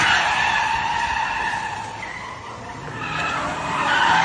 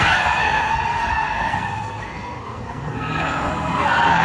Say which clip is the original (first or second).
first